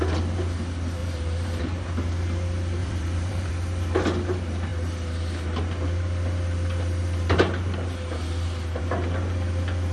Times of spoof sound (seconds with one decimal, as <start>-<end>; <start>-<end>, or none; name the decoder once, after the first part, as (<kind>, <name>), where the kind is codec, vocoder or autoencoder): 1.0-1.6 (vocoder, BigVGAN v2); 2.8-3.5